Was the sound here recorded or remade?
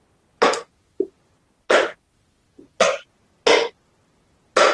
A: recorded